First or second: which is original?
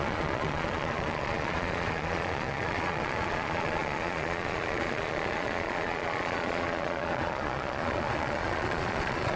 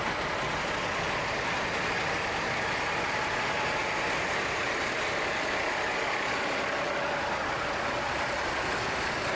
second